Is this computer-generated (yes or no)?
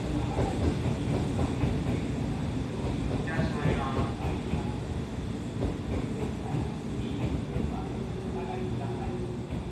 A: no